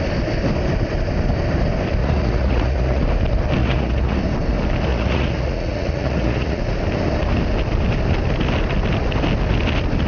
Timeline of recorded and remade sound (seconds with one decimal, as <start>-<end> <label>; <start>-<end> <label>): 0.0-2.0 recorded; 2.0-3.0 remade; 3.0-3.6 recorded; 3.6-4.2 remade; 4.2-4.9 recorded; 4.9-6.6 remade; 6.6-10.1 recorded